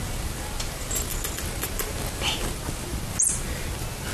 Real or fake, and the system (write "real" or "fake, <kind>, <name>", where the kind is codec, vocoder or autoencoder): real